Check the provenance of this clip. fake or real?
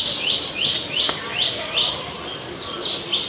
real